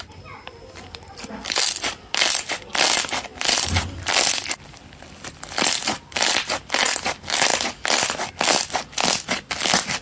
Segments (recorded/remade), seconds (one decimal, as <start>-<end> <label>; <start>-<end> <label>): 0.0-10.0 recorded